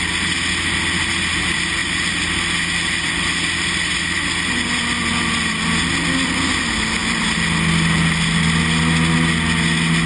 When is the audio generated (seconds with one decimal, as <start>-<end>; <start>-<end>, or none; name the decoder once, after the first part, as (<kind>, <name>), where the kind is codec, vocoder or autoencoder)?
none